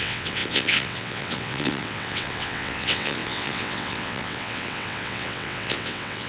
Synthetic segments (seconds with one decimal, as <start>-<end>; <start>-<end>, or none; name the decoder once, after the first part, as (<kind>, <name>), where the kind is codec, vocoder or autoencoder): 0.0-6.3 (vocoder, WaveNeXt)